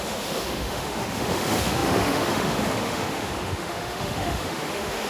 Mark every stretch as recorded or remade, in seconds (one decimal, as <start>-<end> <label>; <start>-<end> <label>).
0.0-5.1 remade